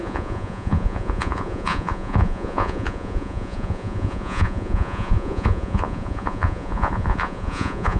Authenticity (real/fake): fake